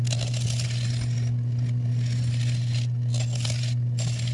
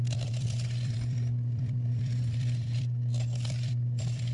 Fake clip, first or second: second